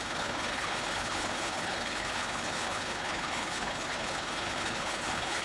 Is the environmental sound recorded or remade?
remade